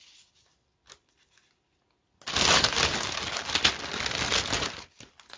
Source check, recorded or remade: recorded